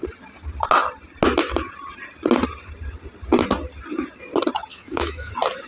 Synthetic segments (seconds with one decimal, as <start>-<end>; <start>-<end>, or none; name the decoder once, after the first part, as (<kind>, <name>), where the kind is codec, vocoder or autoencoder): 4.7-5.3 (autoencoder, DAC-VAE)